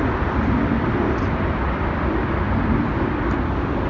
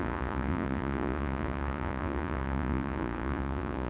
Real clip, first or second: first